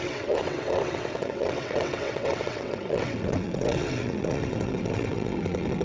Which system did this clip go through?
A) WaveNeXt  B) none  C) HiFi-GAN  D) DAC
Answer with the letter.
A